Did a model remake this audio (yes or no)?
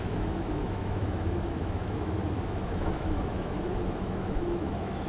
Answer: yes